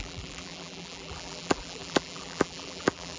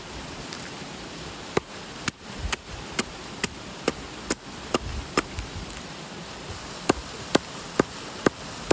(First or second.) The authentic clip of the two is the second